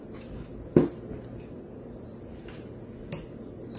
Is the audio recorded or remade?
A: recorded